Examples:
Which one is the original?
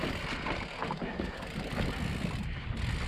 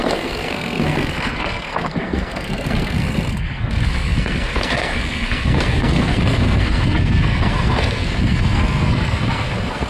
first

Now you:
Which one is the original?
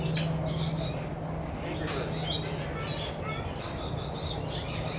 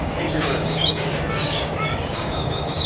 first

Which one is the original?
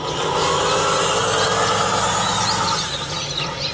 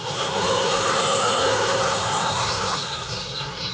first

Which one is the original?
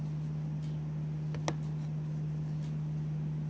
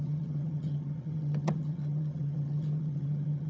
first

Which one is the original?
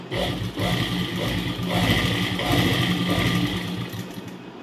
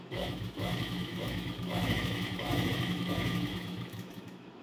first